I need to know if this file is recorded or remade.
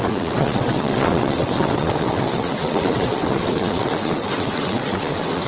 remade